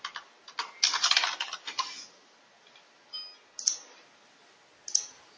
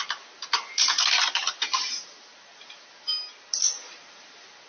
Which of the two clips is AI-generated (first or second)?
second